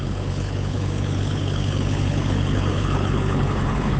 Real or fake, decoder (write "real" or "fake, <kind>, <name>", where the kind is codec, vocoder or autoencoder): fake, codec, HILCodec